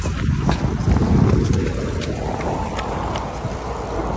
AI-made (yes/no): no